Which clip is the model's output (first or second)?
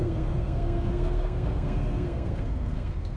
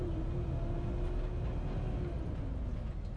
first